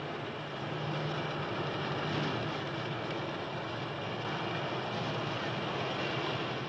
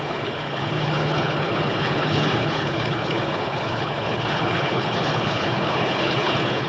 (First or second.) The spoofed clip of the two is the second